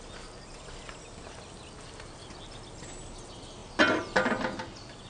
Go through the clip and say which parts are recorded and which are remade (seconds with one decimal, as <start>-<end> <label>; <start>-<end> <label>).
0.0-5.1 recorded